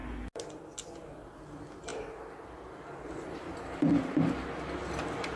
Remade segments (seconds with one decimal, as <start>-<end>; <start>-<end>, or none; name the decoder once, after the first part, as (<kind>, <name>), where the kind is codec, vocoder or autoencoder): none